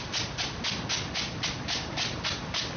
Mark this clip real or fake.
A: real